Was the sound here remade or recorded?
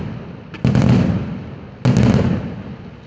recorded